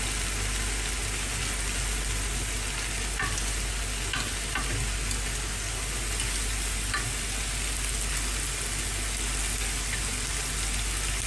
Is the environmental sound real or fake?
real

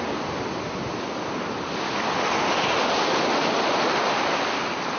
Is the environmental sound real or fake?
real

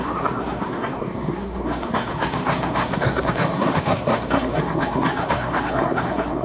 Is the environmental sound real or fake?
fake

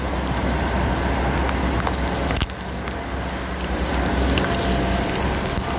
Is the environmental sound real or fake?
real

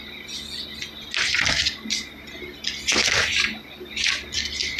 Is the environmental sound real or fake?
real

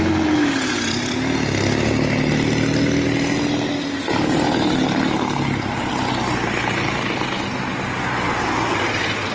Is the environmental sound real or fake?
real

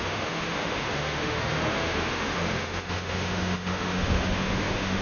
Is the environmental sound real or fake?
fake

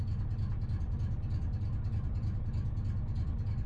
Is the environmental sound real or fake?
real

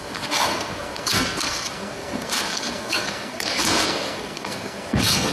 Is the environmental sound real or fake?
fake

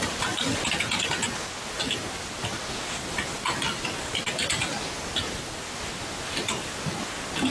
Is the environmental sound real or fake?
real